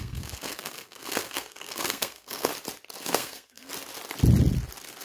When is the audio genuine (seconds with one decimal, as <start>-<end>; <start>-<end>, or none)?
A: 2.5-3.0; 3.7-5.0